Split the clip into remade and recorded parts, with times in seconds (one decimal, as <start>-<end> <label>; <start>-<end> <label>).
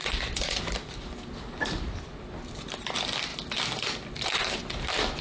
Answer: 0.0-0.6 remade; 0.6-5.2 recorded